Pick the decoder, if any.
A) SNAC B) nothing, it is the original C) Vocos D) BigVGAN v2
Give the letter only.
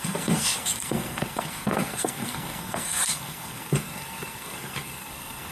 A